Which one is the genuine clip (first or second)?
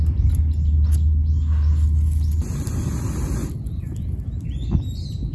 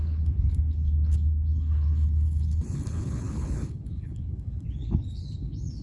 first